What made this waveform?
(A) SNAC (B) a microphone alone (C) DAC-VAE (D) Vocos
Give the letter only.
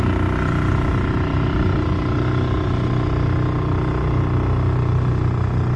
B